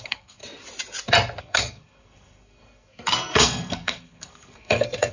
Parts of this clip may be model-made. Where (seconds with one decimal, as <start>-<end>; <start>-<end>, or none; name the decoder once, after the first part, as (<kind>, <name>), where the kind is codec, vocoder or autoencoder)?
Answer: 0.0-0.4 (codec, SNAC); 1.4-5.1